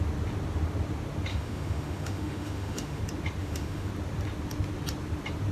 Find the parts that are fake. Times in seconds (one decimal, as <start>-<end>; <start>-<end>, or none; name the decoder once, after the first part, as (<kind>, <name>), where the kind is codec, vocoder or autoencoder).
1.3-3.0 (autoencoder, DAC-VAE); 3.4-3.9